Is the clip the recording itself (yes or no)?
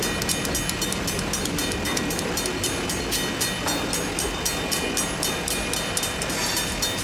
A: yes